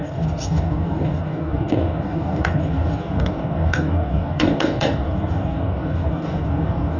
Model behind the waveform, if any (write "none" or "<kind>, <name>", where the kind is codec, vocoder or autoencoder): codec, DAC